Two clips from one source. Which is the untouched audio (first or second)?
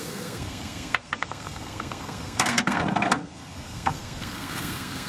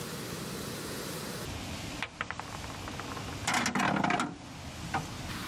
second